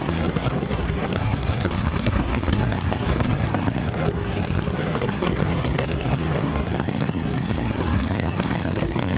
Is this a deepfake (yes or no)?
yes